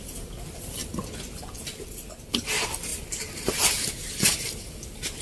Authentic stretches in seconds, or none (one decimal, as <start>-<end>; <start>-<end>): 0.0-2.9; 3.9-5.2